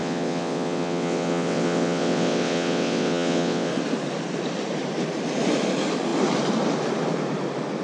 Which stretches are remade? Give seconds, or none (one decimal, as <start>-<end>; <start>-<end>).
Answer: 0.0-3.7